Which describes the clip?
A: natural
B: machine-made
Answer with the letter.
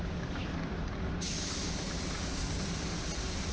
A